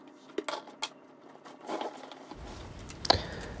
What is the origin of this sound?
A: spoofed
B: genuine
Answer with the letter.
B